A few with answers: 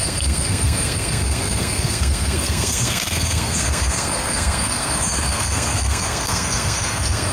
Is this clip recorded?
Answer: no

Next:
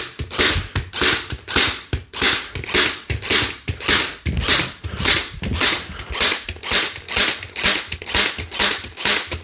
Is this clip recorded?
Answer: no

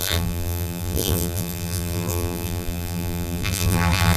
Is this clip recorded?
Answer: no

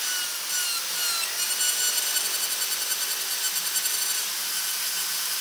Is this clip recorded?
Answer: yes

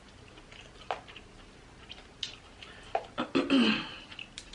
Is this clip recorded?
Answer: yes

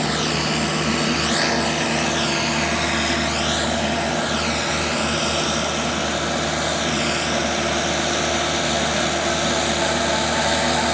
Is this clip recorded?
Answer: yes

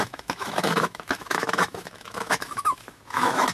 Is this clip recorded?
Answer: no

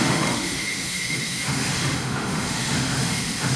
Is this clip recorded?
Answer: no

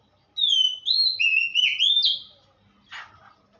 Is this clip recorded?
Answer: yes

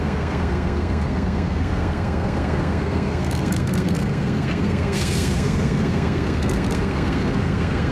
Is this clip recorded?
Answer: no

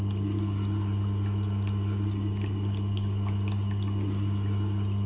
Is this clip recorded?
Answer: yes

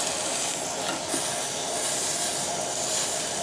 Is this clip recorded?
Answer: yes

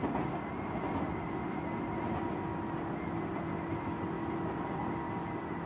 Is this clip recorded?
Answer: yes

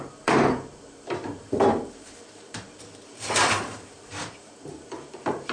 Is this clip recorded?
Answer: no